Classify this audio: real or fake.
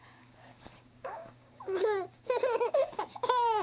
fake